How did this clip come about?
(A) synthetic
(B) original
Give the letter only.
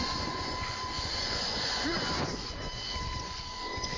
A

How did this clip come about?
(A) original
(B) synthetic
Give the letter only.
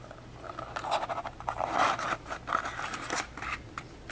A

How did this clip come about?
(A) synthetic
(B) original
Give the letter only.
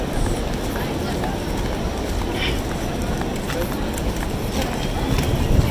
B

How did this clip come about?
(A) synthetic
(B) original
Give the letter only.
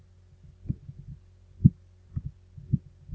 B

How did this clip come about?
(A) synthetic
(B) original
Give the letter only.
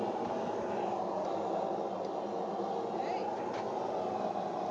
B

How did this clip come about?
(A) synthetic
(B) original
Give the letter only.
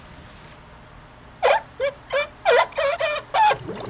B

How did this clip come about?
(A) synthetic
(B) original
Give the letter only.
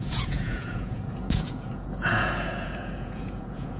A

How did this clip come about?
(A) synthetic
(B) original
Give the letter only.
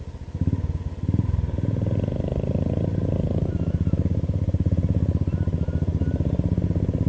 B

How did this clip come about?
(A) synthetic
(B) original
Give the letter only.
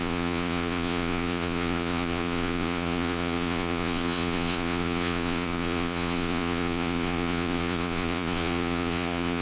A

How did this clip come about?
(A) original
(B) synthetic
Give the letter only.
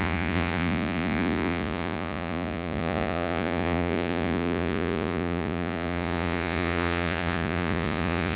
B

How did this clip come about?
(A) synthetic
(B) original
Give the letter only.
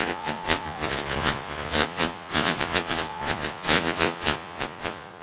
A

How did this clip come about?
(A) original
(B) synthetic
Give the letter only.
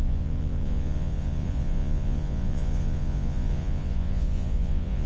B